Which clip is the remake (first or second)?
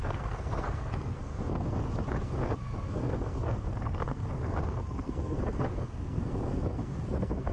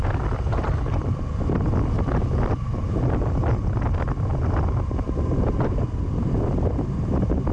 first